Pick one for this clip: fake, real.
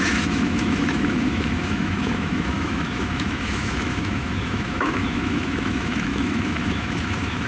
fake